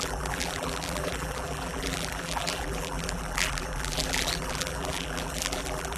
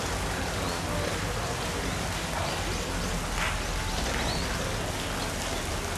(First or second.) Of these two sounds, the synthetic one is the first